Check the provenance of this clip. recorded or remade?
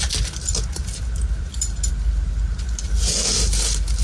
recorded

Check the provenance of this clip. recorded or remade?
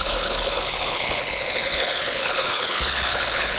remade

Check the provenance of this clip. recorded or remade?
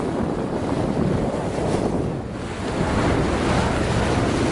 recorded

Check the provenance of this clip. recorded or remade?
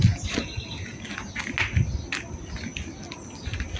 recorded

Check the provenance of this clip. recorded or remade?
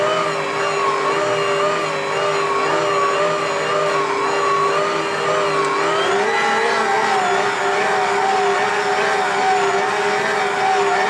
recorded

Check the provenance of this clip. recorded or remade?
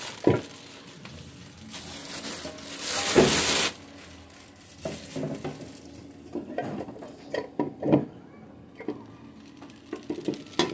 recorded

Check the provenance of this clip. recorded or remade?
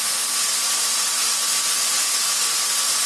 recorded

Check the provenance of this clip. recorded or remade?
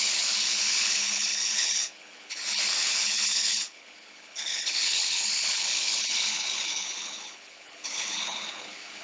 remade